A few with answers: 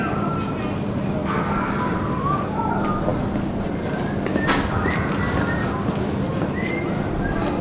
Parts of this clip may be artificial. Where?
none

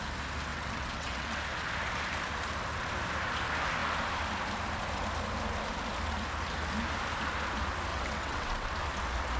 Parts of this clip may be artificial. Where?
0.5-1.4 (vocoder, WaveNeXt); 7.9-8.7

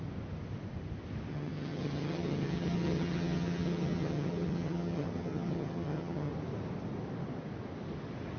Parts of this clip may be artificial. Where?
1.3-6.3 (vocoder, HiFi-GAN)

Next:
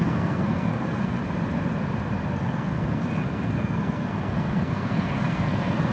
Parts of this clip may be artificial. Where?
0.0-1.2 (codec, SNAC); 2.4-5.9

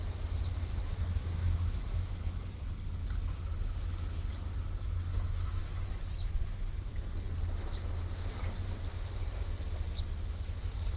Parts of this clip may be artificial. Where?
0.7-2.6 (autoencoder, DAC-VAE); 5.1-7.3

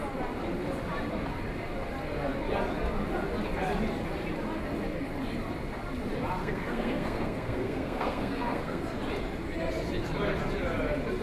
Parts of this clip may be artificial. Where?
6.4-8.8 (codec, SNAC)